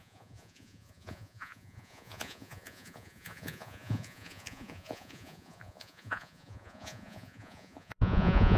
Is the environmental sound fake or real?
fake